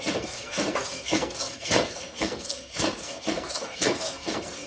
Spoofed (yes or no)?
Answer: yes